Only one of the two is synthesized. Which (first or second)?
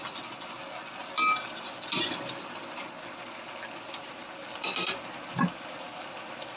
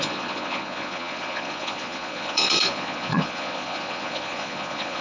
second